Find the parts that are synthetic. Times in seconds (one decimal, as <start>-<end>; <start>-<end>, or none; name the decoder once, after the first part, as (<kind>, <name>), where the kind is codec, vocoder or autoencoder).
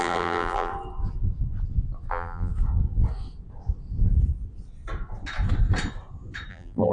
0.0-0.7 (vocoder, BigVGAN v2); 2.1-2.5; 6.5-6.9